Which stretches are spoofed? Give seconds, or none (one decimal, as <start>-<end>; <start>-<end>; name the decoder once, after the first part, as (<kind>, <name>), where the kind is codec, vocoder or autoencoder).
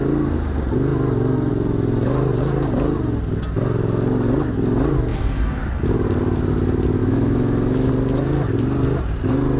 7.0-7.9 (autoencoder, DAC-VAE)